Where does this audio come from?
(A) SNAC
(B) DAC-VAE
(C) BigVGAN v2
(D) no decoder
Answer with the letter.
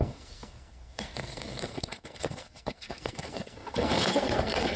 A